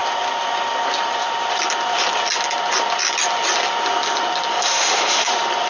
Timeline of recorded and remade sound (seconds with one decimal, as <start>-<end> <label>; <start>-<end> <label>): 0.0-4.5 recorded; 4.5-5.3 remade; 5.3-5.7 recorded